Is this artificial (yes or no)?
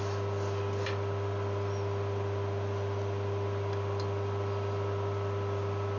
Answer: no